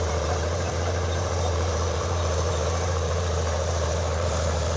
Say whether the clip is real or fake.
fake